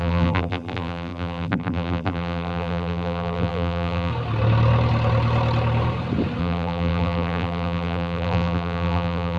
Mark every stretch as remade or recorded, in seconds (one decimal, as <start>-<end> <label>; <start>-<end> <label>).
0.0-4.1 remade; 4.1-6.4 recorded; 6.4-9.4 remade